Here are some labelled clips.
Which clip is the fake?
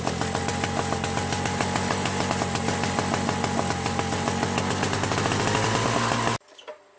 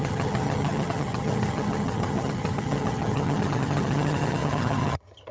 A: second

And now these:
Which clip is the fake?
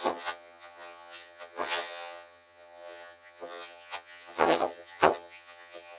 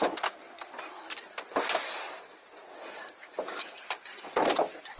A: first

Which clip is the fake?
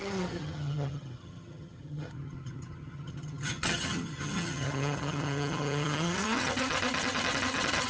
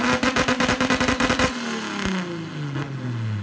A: first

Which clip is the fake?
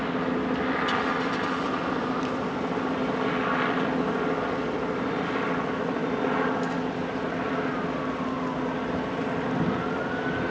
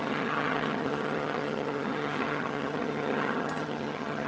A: second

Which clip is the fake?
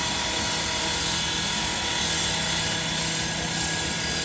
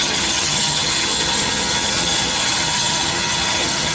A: second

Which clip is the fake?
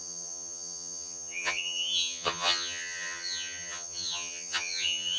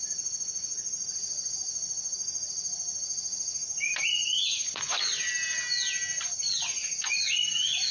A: first